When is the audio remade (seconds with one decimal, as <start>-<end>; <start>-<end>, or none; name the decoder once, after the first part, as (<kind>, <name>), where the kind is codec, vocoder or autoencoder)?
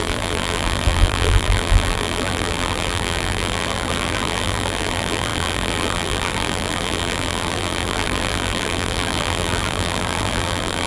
0.0-10.9 (vocoder, BigVGAN v2)